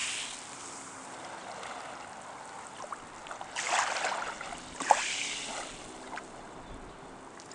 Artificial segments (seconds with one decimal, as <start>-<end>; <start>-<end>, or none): none